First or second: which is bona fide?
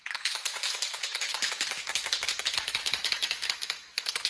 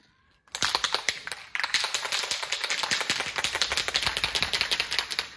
second